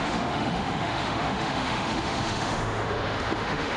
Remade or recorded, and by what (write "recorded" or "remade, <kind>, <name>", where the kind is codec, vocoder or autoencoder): remade, autoencoder, DAC-VAE